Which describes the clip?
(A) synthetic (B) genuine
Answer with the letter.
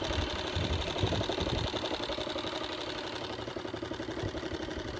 A